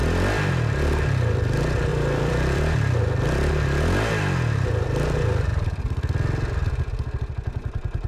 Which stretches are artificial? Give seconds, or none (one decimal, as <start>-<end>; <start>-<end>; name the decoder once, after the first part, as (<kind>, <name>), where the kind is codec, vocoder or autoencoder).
0.0-0.5 (vocoder, BigVGAN v2); 1.9-3.5; 5.5-6.8